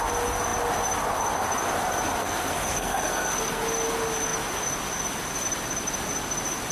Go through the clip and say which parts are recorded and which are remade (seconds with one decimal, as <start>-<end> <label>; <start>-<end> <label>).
0.0-2.2 recorded; 2.2-3.6 remade; 3.6-6.7 recorded